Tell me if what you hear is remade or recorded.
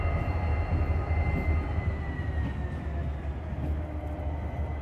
recorded